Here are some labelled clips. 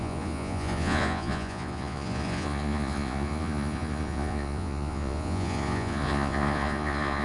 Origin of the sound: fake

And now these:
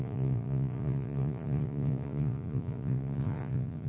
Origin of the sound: fake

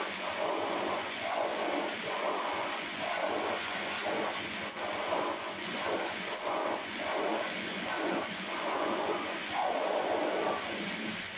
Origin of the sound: fake